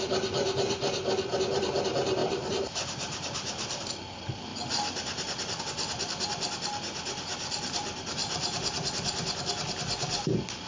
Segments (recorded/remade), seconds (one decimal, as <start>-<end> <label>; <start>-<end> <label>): 0.0-2.2 recorded; 2.2-3.8 remade; 3.8-8.2 recorded; 8.2-8.9 remade; 8.9-10.7 recorded